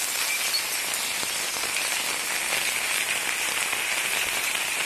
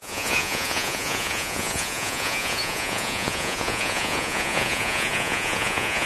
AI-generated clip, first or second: second